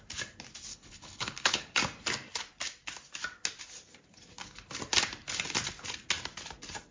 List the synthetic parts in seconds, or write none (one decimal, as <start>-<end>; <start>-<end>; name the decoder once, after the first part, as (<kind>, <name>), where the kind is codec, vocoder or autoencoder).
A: 0.7-1.8 (codec, HILCodec)